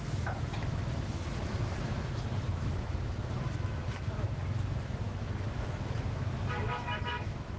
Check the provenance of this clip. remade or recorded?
remade